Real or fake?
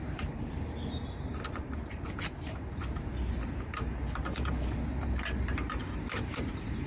fake